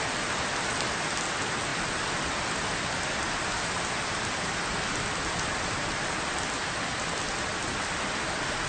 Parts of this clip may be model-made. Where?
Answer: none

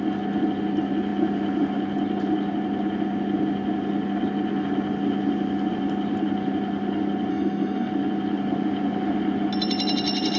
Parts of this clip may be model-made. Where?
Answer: 7.3-7.9 (codec, SNAC)